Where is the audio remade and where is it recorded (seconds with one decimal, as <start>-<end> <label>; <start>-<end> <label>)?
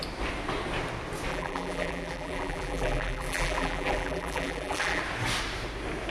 0.0-1.3 recorded; 1.3-5.0 remade; 5.0-6.1 recorded